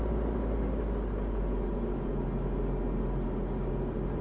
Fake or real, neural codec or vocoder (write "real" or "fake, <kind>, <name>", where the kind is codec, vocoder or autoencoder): real